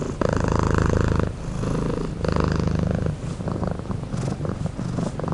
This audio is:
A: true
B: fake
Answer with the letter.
A